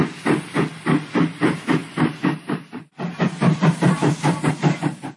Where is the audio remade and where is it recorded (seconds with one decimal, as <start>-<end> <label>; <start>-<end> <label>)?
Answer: 0.0-1.8 recorded; 1.8-5.2 remade